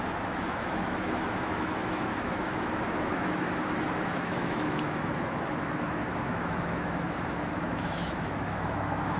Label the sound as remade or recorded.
remade